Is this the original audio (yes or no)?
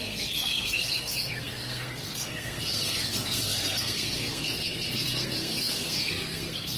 no